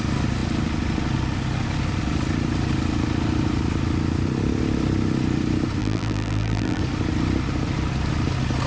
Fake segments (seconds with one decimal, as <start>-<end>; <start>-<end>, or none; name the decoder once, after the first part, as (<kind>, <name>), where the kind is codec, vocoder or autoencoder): 5.8-6.8 (vocoder, BigVGAN v2)